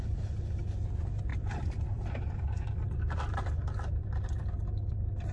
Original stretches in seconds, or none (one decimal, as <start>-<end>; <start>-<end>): 0.0-1.3; 4.5-5.3